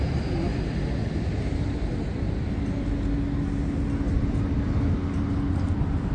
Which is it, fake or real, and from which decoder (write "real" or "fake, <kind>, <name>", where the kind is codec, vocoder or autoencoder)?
real